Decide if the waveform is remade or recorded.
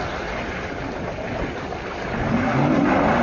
recorded